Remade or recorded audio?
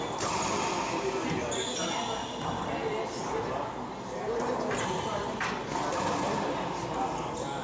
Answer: recorded